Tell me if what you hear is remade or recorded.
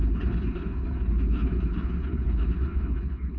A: remade